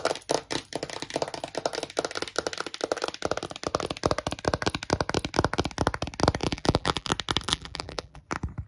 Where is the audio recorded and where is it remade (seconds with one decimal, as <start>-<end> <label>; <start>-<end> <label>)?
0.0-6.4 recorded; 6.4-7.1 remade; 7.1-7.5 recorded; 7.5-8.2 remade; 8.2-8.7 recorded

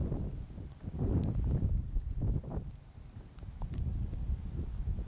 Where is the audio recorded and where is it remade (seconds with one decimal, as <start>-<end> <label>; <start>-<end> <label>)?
0.0-5.1 recorded

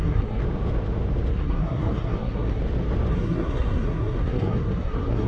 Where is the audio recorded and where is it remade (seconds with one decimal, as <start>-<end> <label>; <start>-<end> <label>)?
0.0-0.4 remade; 0.4-1.3 recorded; 1.3-2.6 remade; 2.6-3.1 recorded; 3.1-5.3 remade

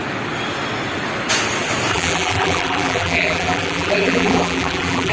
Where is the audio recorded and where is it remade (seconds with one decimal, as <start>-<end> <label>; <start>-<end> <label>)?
0.0-1.9 recorded; 1.9-5.1 remade

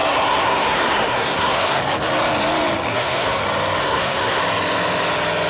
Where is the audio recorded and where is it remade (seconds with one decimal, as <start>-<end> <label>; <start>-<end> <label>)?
0.0-1.8 remade; 1.8-2.9 recorded; 2.9-3.4 remade; 3.4-3.8 recorded; 3.8-4.4 remade; 4.4-5.5 recorded

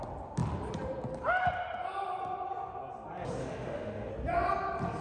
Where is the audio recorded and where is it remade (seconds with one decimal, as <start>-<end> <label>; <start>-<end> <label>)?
0.0-3.4 recorded; 3.4-4.1 remade; 4.1-5.0 recorded

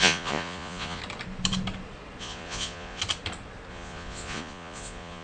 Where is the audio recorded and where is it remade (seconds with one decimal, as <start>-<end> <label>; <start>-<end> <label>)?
0.0-1.0 remade; 1.0-2.2 recorded; 2.2-3.0 remade; 3.0-3.7 recorded; 3.7-5.2 remade